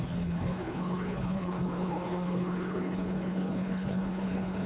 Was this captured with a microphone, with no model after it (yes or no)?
no